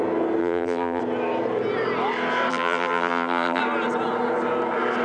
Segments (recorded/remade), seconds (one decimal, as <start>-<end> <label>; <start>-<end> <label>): 0.0-0.4 recorded; 0.4-1.0 remade; 1.0-2.5 recorded; 2.5-3.6 remade; 3.6-5.0 recorded